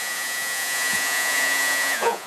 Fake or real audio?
fake